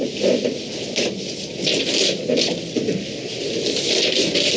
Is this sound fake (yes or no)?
no